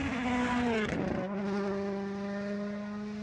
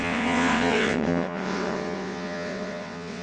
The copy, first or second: second